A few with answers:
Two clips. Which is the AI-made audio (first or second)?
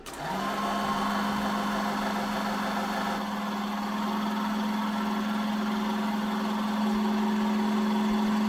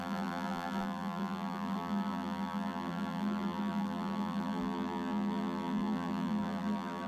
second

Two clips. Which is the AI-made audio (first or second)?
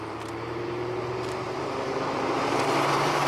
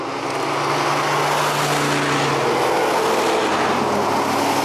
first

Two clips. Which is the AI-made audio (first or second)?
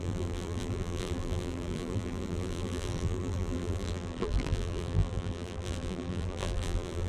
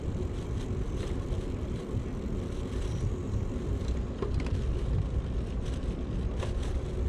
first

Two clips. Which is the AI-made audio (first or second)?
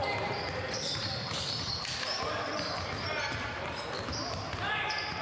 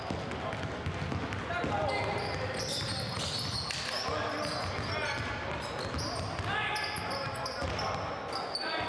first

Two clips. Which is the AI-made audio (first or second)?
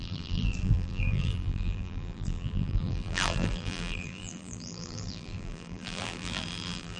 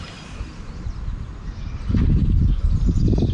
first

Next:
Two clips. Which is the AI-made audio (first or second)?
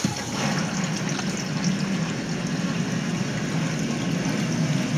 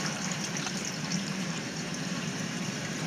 second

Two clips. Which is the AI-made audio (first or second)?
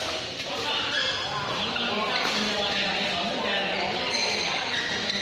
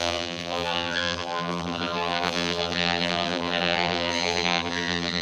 second